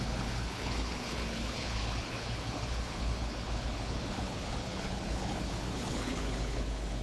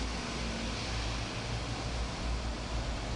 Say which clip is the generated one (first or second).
first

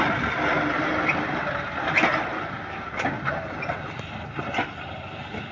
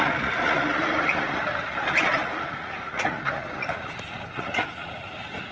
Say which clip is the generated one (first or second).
second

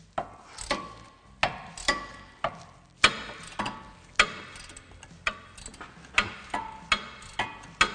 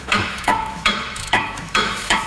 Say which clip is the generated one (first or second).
second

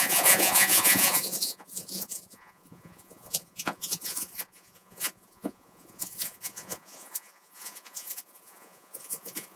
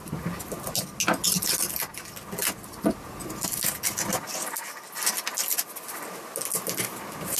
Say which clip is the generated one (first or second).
first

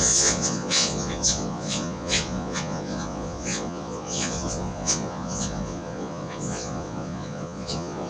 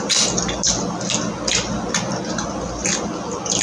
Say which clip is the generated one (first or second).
first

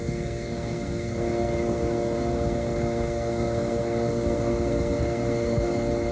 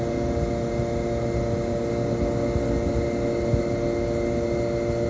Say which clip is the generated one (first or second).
first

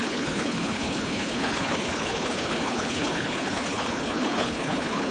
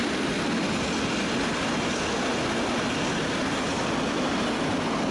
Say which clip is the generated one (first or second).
first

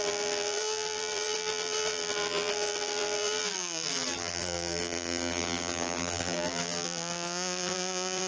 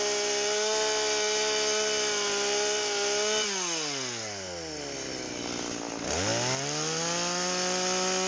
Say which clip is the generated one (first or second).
first